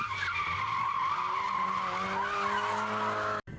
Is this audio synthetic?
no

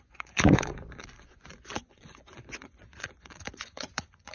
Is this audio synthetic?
yes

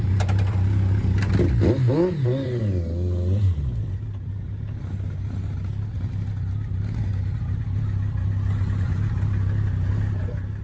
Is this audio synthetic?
no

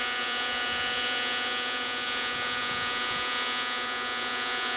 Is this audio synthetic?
yes